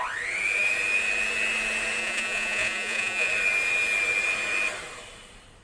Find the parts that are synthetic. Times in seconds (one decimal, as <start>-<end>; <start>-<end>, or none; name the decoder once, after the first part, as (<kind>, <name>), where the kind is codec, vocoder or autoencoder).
2.0-3.3 (vocoder, Vocos)